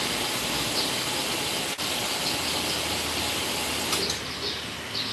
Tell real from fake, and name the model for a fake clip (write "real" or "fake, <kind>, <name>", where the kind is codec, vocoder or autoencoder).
real